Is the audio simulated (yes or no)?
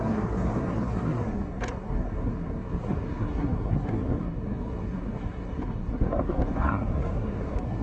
yes